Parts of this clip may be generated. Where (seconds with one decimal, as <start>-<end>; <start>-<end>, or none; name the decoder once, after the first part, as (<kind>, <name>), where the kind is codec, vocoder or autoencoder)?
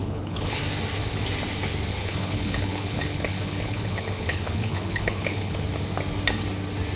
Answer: 0.0-0.6 (codec, HILCodec); 1.9-5.7